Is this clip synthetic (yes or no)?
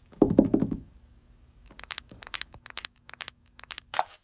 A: yes